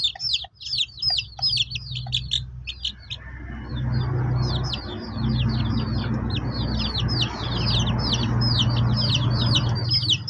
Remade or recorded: recorded